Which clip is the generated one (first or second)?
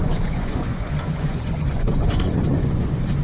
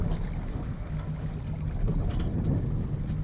first